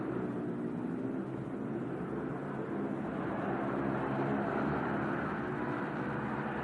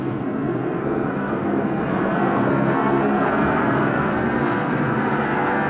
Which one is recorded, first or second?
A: first